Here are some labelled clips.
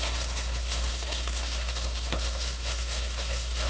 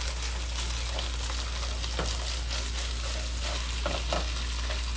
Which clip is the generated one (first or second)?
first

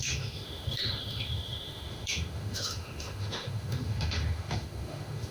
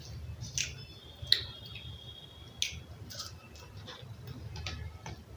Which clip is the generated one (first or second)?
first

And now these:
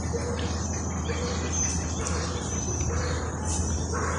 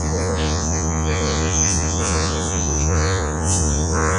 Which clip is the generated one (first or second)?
second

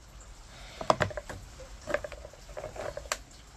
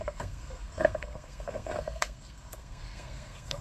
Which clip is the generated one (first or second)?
second